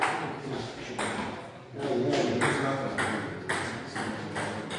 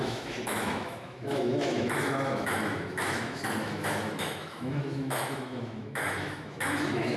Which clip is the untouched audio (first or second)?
first